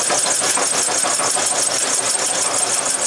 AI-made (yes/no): no